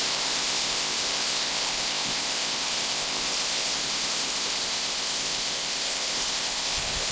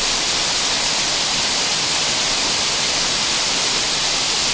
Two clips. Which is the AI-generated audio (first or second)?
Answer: first